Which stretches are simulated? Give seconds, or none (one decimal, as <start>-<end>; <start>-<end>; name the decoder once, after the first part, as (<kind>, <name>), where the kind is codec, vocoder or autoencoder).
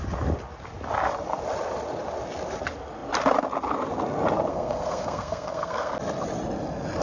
4.5-5.9 (codec, SNAC)